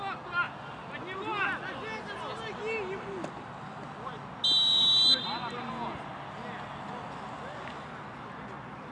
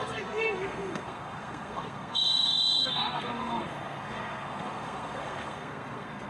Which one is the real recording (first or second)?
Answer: first